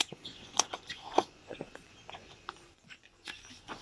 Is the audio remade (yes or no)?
yes